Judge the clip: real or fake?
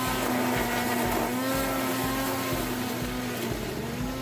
real